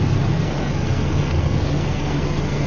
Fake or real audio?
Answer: fake